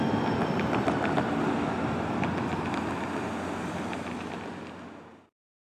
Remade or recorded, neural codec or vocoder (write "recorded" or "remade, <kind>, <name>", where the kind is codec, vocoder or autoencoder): recorded